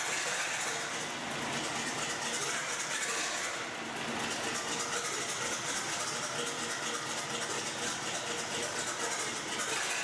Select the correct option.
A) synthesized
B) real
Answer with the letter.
B